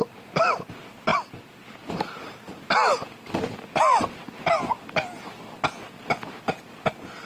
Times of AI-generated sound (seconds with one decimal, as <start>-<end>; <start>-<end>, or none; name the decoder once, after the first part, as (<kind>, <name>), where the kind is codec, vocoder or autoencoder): none